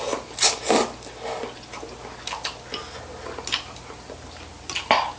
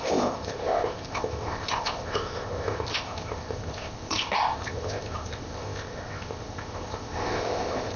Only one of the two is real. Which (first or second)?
first